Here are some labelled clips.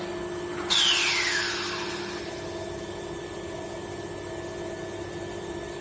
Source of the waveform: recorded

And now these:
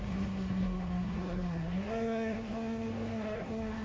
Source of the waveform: remade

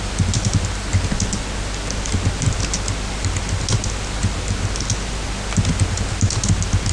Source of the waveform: recorded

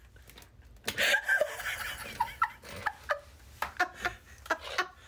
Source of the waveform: recorded